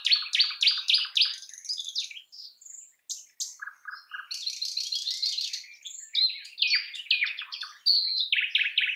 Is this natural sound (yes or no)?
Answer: yes